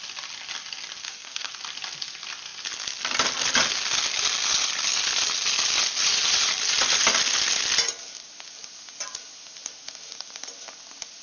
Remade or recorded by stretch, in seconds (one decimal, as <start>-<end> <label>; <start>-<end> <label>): 0.0-1.0 recorded; 1.0-1.5 remade; 1.5-11.2 recorded

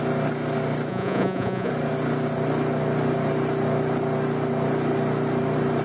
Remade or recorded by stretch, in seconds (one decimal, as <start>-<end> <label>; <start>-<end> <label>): 0.0-0.9 recorded; 0.9-1.7 remade; 1.7-5.8 recorded

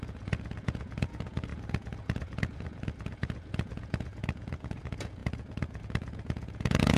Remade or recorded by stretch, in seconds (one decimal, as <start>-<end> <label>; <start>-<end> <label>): 0.0-7.0 remade

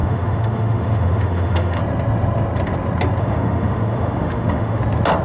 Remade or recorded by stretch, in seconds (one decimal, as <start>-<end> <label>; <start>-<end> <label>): 0.0-1.8 remade; 1.8-3.2 recorded; 3.2-4.8 remade; 4.8-5.2 recorded

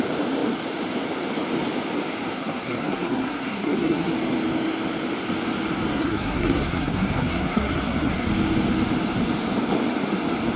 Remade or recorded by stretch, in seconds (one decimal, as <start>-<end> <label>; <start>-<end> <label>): 0.0-2.3 recorded; 2.3-4.1 remade; 4.1-5.9 recorded; 5.9-8.3 remade; 8.3-10.6 recorded

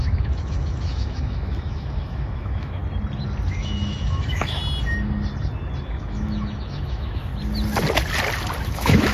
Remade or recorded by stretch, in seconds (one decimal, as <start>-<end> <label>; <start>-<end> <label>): 0.0-2.8 remade; 2.8-3.5 recorded; 3.5-4.6 remade; 4.6-5.8 recorded; 5.8-7.3 remade; 7.3-8.6 recorded; 8.6-9.1 remade